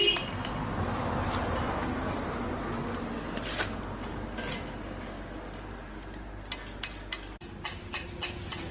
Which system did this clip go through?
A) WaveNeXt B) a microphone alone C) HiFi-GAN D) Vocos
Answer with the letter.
B